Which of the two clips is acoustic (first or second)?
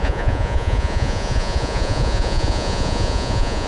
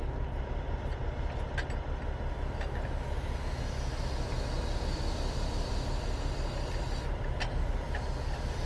second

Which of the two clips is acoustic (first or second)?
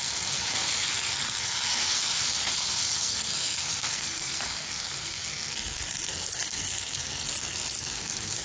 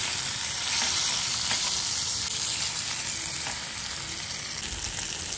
second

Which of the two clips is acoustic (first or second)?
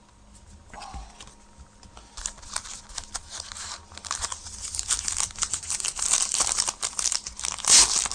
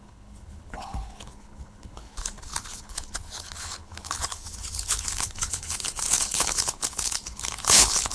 first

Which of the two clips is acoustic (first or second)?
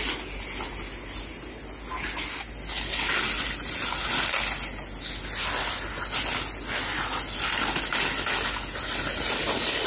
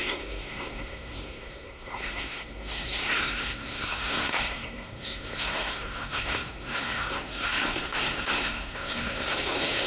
first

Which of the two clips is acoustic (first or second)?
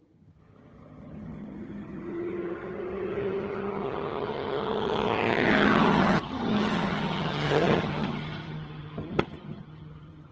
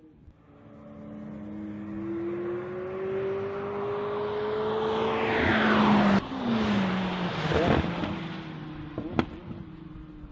second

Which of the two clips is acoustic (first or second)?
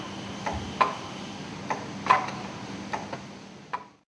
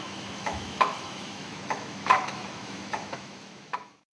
first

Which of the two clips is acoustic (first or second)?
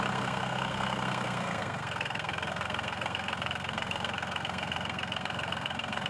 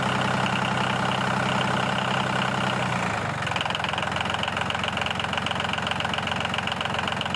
second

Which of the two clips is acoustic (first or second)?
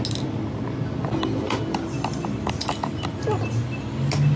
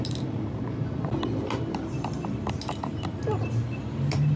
first